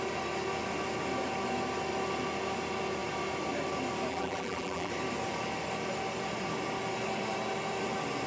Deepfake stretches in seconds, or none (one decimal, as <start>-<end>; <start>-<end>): 4.1-4.9